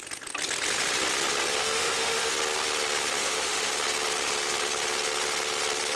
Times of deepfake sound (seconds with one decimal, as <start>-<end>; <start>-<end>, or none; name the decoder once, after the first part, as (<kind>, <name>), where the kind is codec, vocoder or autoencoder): 1.6-2.3 (autoencoder, DAC-VAE); 3.2-3.7